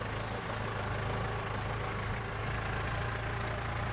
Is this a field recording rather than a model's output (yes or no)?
yes